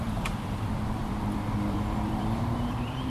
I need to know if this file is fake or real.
fake